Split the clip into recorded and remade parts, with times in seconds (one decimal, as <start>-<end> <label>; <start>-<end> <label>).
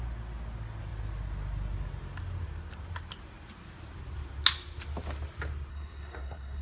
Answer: 0.0-5.7 recorded; 5.7-6.6 remade